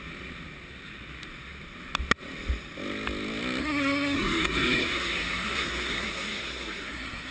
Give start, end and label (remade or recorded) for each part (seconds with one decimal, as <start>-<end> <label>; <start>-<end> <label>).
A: 0.0-3.6 recorded; 3.6-7.3 remade